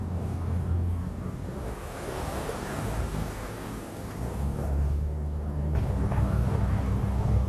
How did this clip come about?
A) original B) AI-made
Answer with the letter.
B